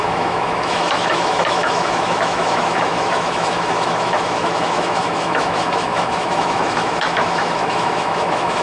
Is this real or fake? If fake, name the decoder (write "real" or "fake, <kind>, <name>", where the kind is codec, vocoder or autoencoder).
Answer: fake, autoencoder, DAC-VAE